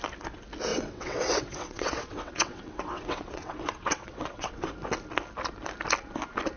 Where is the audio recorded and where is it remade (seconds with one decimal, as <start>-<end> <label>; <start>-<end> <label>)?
0.0-0.7 recorded; 0.7-4.7 remade; 4.7-6.6 recorded